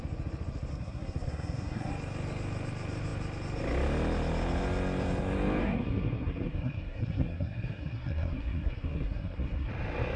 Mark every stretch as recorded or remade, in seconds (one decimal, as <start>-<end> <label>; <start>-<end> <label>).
0.0-0.7 recorded; 0.7-1.9 remade; 1.9-5.6 recorded; 5.6-9.7 remade; 9.7-10.2 recorded